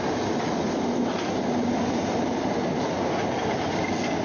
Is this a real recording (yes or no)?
yes